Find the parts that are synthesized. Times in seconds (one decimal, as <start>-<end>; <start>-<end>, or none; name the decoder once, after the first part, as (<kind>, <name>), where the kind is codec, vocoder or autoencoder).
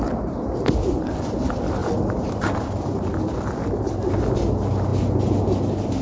1.8-3.8 (vocoder, BigVGAN v2)